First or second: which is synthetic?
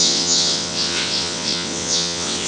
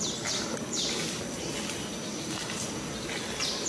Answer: first